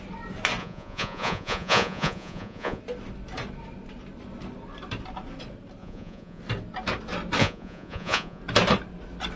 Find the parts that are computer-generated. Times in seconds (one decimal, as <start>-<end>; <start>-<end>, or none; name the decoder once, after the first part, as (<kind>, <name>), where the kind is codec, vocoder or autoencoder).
0.6-2.8 (vocoder, Vocos); 5.8-6.4; 7.4-8.4